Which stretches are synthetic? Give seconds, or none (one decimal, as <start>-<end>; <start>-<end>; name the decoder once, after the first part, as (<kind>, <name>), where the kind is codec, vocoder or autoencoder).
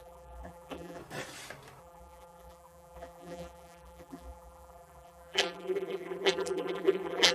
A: 0.0-1.0 (vocoder, BigVGAN v2); 1.8-7.3